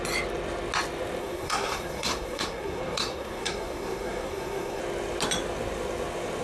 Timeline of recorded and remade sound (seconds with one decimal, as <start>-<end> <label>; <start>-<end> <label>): 0.0-1.2 recorded; 1.2-4.8 remade; 4.8-6.4 recorded